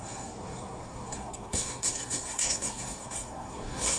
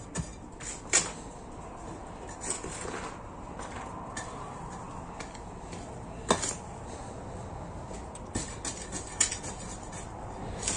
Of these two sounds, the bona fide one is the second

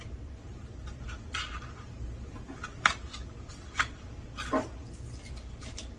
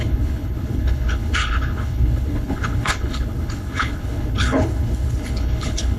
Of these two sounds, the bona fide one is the first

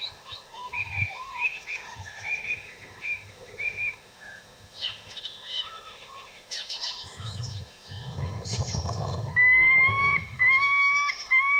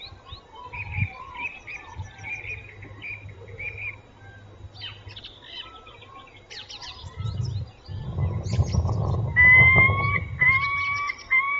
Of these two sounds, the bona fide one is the second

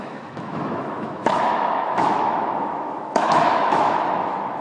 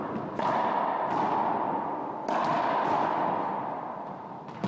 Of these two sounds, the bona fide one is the second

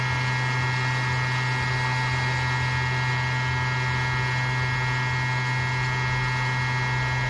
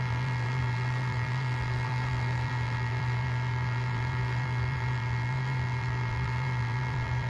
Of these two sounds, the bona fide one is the first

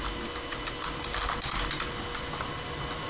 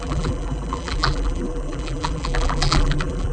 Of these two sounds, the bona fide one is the first